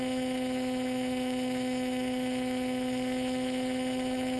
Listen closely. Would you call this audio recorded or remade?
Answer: remade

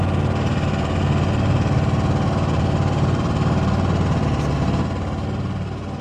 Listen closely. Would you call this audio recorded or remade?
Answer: recorded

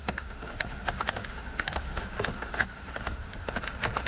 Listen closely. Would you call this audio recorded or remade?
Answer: remade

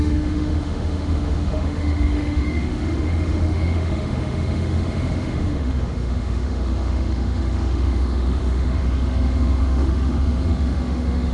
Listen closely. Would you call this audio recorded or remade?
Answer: remade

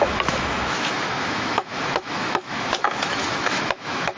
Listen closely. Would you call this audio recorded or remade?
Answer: remade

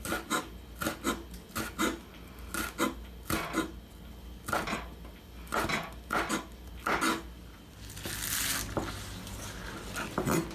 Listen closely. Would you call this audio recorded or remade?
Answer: recorded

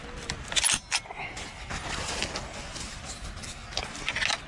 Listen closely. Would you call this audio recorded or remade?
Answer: recorded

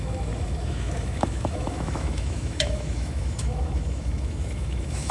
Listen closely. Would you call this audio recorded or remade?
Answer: remade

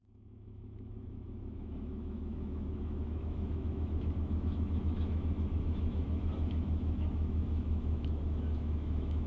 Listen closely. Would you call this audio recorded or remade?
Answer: remade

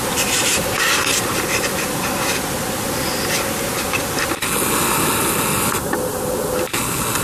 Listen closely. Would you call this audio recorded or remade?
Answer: recorded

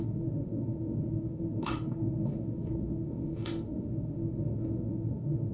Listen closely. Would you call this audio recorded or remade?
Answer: remade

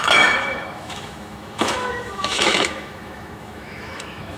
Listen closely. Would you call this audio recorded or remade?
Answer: remade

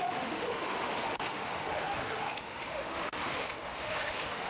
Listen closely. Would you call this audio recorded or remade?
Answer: remade